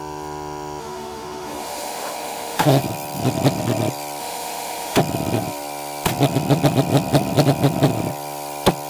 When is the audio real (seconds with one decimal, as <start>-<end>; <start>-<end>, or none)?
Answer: 0.0-0.8; 2.8-4.2; 5.0-8.9